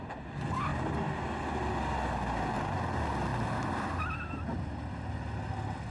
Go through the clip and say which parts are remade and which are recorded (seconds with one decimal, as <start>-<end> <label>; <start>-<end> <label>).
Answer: 0.0-5.9 recorded